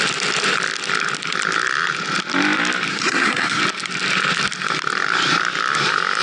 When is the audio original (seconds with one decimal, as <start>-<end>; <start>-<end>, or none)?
0.0-2.9; 3.6-6.2